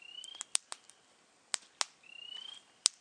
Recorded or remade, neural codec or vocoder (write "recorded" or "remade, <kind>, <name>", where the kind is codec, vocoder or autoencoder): recorded